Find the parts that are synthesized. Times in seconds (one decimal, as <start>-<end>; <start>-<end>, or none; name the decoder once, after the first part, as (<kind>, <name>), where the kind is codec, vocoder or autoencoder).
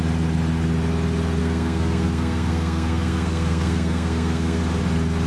1.4-4.6 (codec, SNAC)